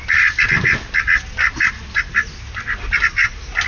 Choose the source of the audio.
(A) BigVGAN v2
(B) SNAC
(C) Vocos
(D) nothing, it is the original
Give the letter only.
D